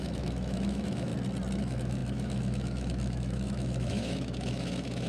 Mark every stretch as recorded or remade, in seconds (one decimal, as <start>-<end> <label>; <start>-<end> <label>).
0.0-1.1 remade; 1.1-1.6 recorded; 1.6-5.1 remade